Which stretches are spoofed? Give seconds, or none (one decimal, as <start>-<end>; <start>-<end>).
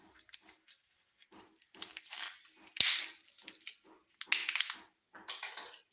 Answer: none